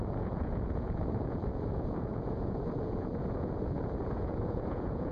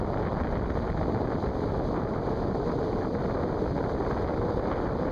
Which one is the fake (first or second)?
first